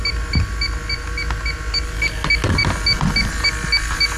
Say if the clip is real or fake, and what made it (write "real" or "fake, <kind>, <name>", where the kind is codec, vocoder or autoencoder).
real